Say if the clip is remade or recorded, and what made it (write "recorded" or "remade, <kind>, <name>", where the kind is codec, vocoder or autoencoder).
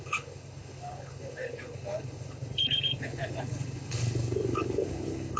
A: remade, codec, HILCodec